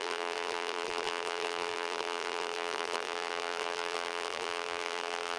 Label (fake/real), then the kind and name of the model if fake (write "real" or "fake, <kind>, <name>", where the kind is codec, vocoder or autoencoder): fake, vocoder, BigVGAN v2